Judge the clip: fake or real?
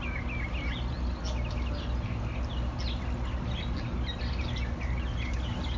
real